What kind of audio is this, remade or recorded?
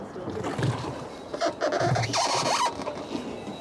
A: recorded